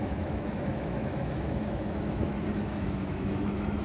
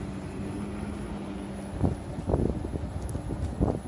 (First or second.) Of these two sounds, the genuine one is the second